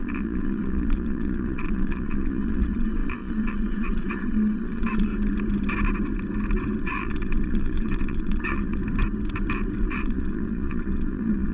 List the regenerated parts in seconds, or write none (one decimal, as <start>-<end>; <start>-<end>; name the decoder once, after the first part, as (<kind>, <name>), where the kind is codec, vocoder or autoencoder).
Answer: 0.0-5.1 (vocoder, Vocos); 6.8-8.8; 9.8-11.5